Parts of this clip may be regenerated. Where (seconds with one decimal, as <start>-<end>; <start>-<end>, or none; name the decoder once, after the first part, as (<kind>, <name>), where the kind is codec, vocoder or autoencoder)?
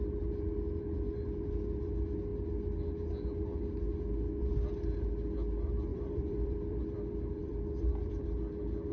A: 5.9-6.8 (vocoder, BigVGAN v2); 7.4-8.5